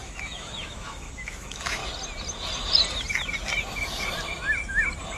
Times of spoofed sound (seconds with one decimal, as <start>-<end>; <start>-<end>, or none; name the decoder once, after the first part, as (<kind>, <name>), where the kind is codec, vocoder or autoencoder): 0.0-1.8 (autoencoder, DAC-VAE)